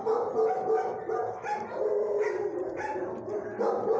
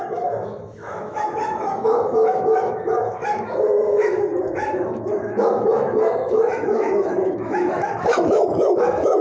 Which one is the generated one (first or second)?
second